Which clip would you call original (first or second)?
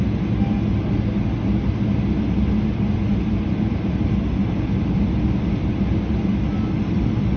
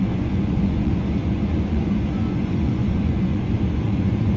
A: first